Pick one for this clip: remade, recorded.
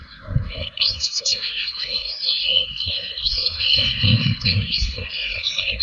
remade